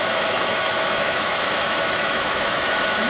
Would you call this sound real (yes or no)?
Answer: no